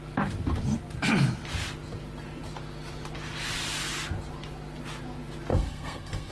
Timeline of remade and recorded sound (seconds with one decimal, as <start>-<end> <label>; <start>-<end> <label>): 0.0-5.5 recorded; 5.5-6.3 remade